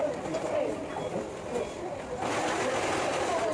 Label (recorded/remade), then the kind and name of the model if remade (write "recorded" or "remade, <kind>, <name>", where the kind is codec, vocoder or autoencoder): recorded